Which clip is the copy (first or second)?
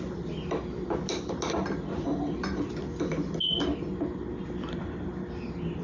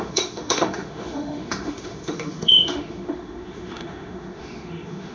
second